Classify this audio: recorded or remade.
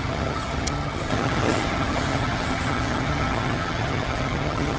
remade